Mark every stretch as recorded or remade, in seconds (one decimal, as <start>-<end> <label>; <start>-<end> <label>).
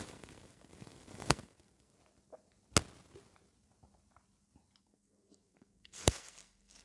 0.0-2.0 remade; 2.0-4.8 recorded; 4.8-6.8 remade